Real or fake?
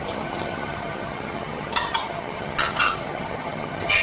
fake